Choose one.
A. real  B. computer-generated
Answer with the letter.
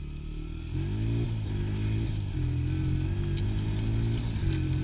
A